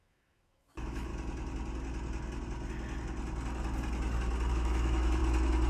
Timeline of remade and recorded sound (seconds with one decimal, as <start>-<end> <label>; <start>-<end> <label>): 0.0-1.1 remade; 1.1-4.5 recorded; 4.5-5.2 remade; 5.2-5.7 recorded